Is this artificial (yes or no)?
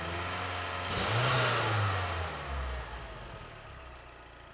no